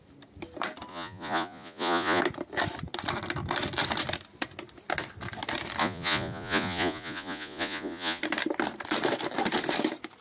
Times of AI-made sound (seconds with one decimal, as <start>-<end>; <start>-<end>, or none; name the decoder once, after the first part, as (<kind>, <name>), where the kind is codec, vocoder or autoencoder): 0.9-2.2 (vocoder, Vocos); 5.8-8.2